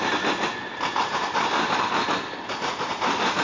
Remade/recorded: recorded